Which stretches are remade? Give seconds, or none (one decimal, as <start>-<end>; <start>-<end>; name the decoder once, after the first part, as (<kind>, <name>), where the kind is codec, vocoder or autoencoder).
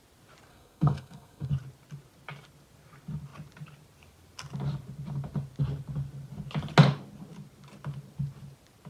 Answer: 0.5-1.5 (codec, SNAC)